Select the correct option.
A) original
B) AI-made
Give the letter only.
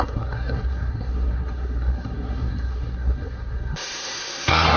B